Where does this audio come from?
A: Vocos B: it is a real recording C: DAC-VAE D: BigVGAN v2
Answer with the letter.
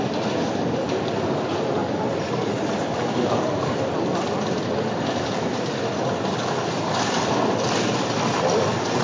B